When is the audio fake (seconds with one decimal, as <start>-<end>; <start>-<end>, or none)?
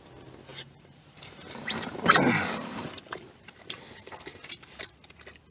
0.5-3.8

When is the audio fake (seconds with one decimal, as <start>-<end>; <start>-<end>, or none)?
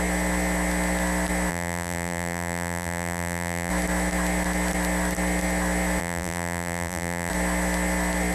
1.5-3.7; 6.0-7.3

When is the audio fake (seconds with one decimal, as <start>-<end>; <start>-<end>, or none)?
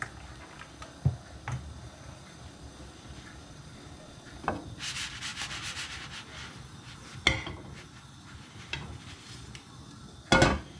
none